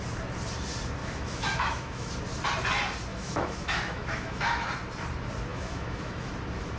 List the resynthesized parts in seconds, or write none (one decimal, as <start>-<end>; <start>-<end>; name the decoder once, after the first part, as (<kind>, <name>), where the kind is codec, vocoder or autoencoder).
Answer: 1.0-2.1 (autoencoder, DAC-VAE); 3.1-4.7; 5.5-6.3